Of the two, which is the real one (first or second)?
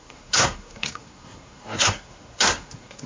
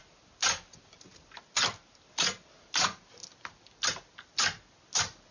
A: second